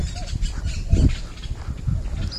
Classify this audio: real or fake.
real